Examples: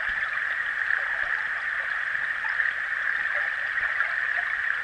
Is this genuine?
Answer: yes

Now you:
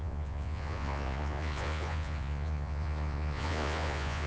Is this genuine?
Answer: no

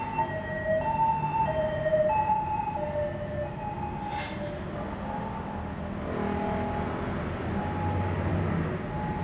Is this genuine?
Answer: yes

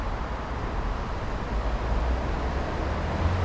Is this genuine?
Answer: yes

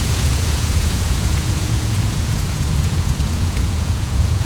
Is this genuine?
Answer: no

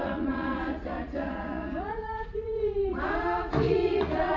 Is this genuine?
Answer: no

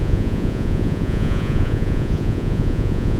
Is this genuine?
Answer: no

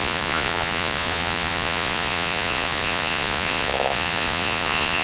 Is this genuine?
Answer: no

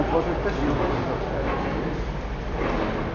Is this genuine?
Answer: yes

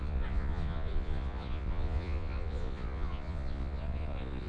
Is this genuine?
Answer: no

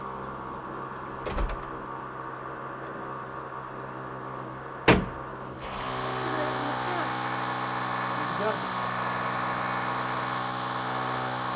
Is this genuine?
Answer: yes